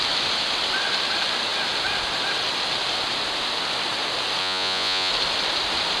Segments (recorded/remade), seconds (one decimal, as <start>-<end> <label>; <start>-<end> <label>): 0.0-4.4 recorded; 4.4-5.1 remade; 5.1-6.0 recorded